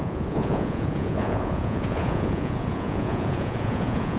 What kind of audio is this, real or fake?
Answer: fake